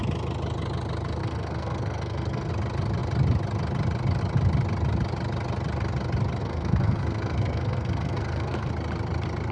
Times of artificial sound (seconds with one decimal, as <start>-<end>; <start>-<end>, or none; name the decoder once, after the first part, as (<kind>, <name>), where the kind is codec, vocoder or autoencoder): 1.2-2.5 (codec, SNAC); 6.4-8.7